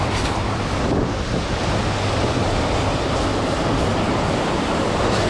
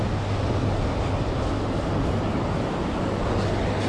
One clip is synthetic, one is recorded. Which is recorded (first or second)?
second